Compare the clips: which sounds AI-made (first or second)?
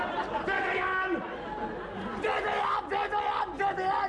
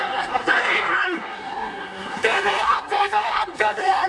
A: second